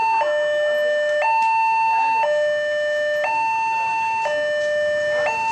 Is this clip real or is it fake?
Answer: real